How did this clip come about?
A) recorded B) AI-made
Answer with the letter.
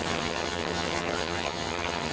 B